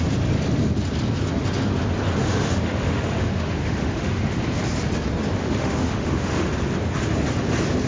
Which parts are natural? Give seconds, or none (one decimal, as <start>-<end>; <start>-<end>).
0.0-2.2; 4.4-5.4; 6.5-7.9